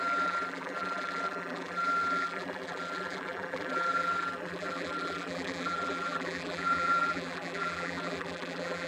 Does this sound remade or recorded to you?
remade